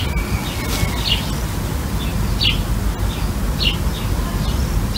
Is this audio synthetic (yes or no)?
no